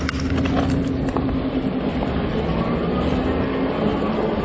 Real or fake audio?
real